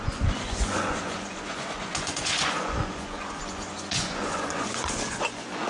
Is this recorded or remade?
remade